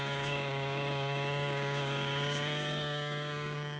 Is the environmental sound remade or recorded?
remade